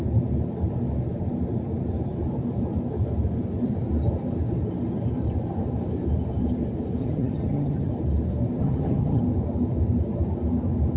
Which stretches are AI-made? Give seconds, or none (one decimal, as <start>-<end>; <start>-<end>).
7.0-7.9; 8.6-9.2